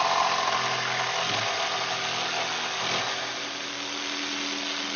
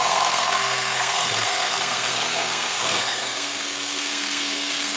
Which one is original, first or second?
first